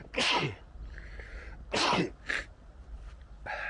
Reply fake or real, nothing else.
real